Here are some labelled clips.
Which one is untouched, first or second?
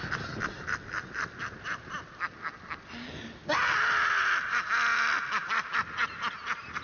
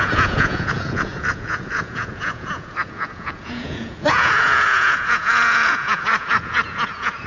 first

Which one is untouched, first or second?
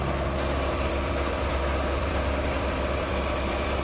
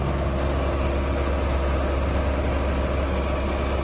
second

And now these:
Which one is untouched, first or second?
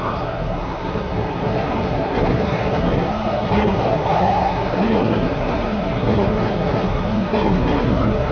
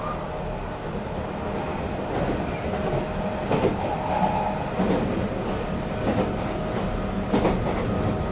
second